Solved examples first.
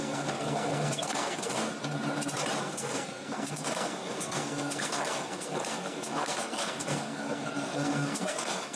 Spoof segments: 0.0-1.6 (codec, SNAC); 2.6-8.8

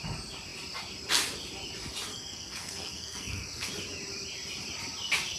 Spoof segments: 2.1-3.7 (codec, SNAC)